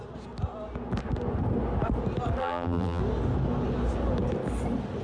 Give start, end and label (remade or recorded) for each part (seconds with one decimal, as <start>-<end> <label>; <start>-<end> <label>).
0.0-2.4 recorded; 2.4-3.0 remade; 3.0-5.0 recorded